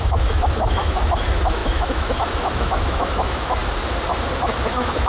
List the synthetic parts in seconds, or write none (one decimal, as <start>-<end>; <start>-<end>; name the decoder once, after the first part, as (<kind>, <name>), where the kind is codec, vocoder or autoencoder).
0.0-3.6 (autoencoder, DAC-VAE); 4.4-5.1